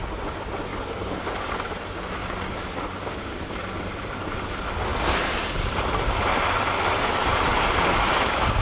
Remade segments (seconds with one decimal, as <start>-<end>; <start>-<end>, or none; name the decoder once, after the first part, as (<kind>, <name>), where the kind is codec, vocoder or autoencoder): 2.2-3.5 (codec, DAC)